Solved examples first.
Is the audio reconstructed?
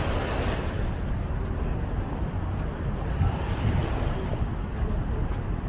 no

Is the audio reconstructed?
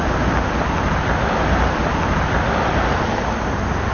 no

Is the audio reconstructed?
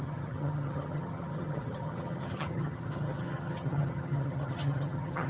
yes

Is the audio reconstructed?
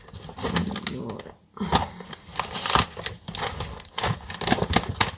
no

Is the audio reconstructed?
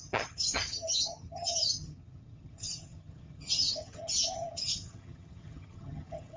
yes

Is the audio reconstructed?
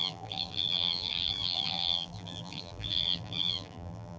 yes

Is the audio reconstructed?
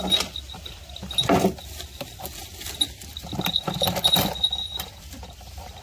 no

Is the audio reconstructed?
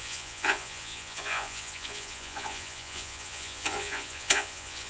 yes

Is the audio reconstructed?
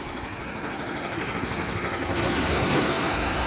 yes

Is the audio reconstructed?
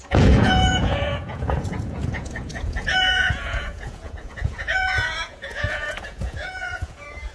yes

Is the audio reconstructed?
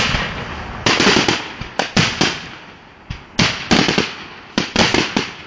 no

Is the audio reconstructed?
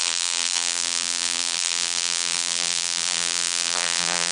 yes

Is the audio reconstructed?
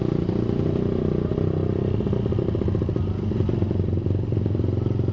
no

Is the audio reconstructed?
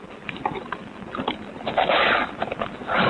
no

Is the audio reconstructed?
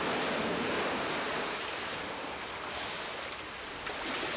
no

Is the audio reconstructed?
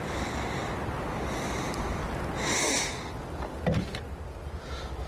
no